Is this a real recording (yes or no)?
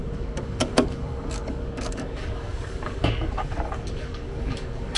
no